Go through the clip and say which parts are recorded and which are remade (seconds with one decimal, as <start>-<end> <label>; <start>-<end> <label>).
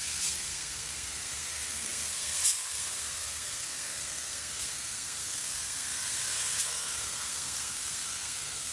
0.0-8.7 remade